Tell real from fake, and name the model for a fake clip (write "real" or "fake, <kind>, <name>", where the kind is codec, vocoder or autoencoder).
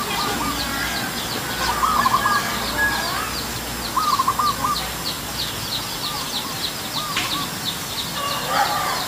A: real